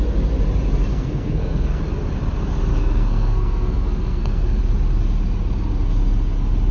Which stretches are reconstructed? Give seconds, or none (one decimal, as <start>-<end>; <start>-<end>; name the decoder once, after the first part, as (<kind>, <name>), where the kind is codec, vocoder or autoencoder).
0.9-1.8 (codec, SNAC); 2.7-4.6